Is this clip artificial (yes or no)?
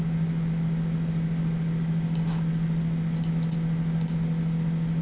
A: no